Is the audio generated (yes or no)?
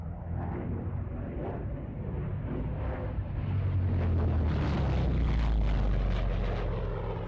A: no